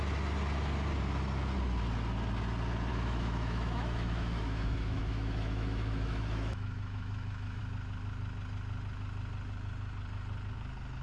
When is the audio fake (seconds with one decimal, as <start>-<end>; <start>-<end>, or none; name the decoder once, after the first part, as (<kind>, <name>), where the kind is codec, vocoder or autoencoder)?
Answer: 2.9-7.6 (autoencoder, DAC-VAE)